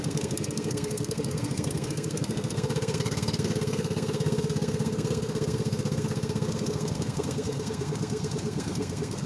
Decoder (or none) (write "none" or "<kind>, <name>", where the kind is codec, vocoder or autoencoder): codec, SNAC